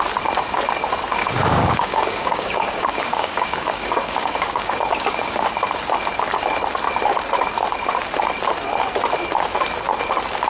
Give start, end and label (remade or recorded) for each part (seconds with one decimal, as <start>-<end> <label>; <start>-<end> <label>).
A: 0.0-1.2 recorded; 1.2-5.5 remade; 5.5-10.5 recorded